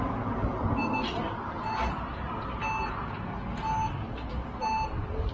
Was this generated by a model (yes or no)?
no